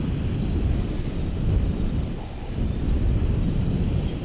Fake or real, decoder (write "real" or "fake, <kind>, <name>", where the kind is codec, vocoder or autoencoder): real